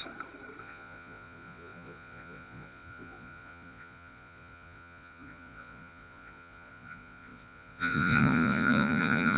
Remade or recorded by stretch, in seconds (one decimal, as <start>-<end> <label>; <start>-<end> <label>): 0.0-0.6 recorded; 0.6-9.4 remade